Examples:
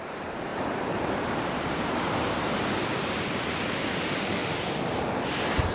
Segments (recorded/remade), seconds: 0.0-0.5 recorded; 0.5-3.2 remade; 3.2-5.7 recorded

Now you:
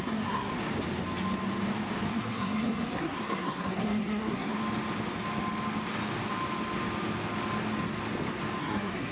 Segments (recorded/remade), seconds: 0.0-0.5 remade; 0.5-2.1 recorded; 2.1-4.6 remade; 4.6-8.6 recorded; 8.6-9.1 remade

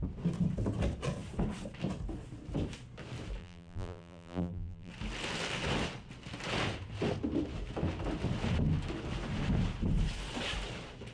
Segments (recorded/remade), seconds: 0.0-3.4 recorded; 3.4-4.9 remade; 4.9-11.1 recorded

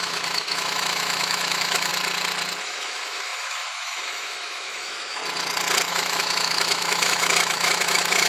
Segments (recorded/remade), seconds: 0.0-1.9 remade; 1.9-2.6 recorded; 2.6-5.2 remade; 5.2-5.9 recorded; 5.9-8.3 remade

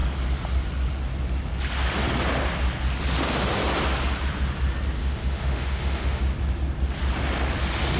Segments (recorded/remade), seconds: 0.0-5.0 recorded; 5.0-6.2 remade; 6.2-8.0 recorded